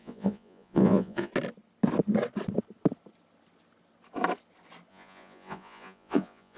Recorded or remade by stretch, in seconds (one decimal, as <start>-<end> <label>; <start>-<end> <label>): 0.0-1.3 remade; 1.3-4.9 recorded; 4.9-6.6 remade